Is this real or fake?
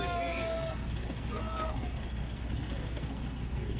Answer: fake